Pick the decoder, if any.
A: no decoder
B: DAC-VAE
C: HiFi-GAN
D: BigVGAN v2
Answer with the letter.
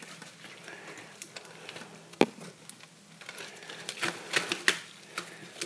A